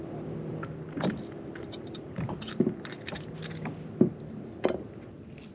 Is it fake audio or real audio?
real